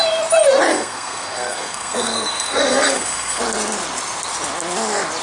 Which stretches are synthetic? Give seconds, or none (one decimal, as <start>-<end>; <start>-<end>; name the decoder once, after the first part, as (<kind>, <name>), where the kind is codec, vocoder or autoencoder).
0.7-3.4 (codec, SNAC)